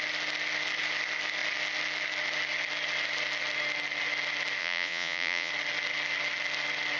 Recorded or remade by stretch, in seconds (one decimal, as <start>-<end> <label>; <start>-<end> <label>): 0.0-4.6 recorded; 4.6-5.5 remade; 5.5-7.0 recorded